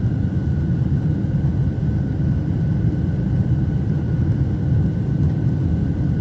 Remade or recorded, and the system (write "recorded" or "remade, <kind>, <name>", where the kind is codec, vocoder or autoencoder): recorded